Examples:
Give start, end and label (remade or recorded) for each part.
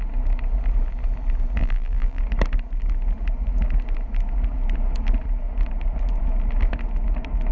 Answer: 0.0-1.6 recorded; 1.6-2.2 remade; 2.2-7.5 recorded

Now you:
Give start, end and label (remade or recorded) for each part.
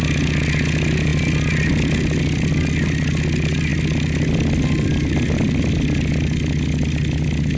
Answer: 0.0-7.6 recorded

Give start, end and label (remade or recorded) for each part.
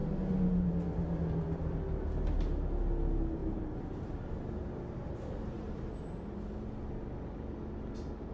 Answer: 0.0-3.4 recorded; 3.4-5.7 remade; 5.7-8.3 recorded